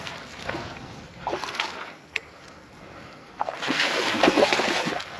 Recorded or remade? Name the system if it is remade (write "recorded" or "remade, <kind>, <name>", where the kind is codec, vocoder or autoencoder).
remade, codec, SNAC